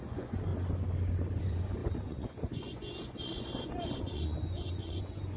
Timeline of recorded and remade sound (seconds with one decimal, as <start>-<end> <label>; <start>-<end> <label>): 0.0-0.5 remade; 0.5-1.4 recorded; 1.4-5.4 remade